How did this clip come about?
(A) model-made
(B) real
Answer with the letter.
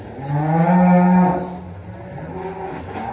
B